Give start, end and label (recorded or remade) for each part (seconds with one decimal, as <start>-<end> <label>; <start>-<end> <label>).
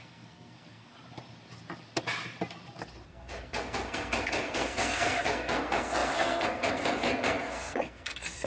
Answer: 0.0-0.9 remade; 0.9-3.1 recorded; 3.1-8.5 remade